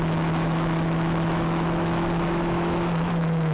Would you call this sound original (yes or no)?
no